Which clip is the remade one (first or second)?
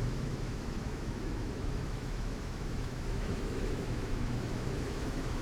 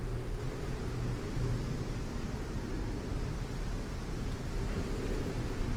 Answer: first